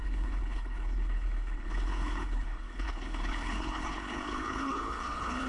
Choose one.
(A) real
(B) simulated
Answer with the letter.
B